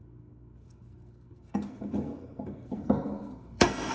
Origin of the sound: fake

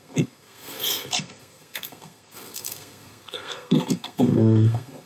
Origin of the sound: fake